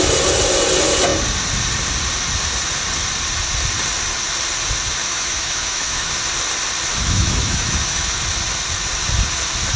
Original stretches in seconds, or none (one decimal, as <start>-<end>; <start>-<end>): 0.0-5.0; 6.1-6.9; 8.2-9.8

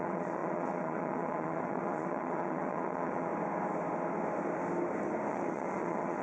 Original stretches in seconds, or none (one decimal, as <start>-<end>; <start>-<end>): 3.3-5.3

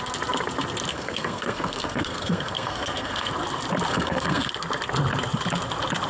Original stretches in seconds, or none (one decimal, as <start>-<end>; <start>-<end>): 0.0-0.9; 3.3-3.9; 4.5-6.1

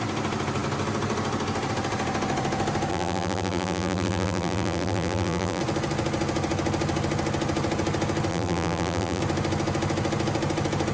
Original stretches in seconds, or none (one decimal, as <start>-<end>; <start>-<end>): 0.0-2.9; 5.6-8.3; 9.2-10.9